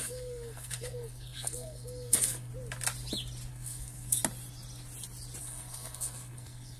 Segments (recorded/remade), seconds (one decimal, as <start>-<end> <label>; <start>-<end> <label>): 0.0-2.5 remade; 2.5-3.5 recorded; 3.5-4.2 remade; 4.2-5.4 recorded; 5.4-6.8 remade